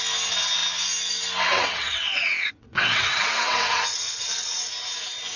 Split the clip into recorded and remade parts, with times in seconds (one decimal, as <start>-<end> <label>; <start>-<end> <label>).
0.0-1.5 recorded; 1.5-4.7 remade; 4.7-5.4 recorded